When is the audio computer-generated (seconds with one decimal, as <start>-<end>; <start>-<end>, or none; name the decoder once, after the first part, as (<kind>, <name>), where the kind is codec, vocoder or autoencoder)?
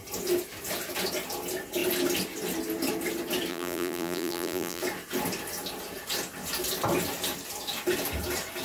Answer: 3.5-4.8 (vocoder, BigVGAN v2)